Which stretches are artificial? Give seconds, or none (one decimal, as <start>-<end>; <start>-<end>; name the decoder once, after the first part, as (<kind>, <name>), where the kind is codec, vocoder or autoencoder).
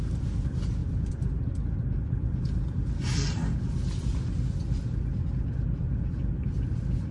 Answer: none